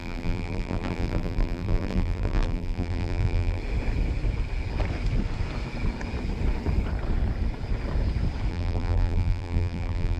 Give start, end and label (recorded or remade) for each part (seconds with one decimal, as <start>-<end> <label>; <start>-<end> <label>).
0.0-3.6 remade; 3.6-8.5 recorded; 8.5-10.2 remade